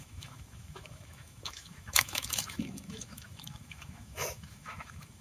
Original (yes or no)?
no